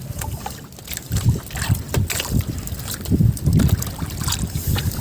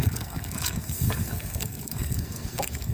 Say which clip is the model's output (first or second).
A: second